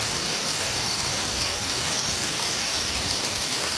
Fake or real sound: fake